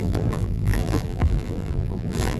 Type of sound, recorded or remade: remade